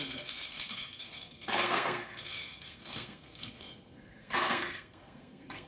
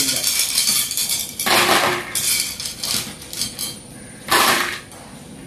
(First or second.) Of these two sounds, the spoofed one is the first